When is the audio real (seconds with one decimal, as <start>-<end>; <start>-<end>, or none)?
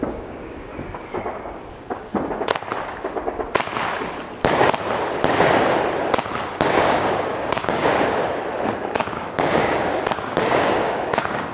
0.7-1.7; 2.1-6.8; 7.9-8.8